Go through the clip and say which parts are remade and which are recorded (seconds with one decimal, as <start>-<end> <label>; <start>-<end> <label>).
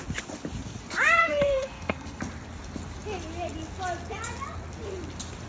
0.0-1.2 recorded; 1.2-2.2 remade; 2.2-5.5 recorded